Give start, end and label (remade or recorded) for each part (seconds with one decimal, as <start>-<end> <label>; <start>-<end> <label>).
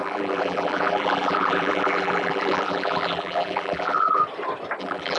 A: 0.0-4.2 remade; 4.2-4.8 recorded; 4.8-5.2 remade